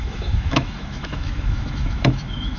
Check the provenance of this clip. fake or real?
fake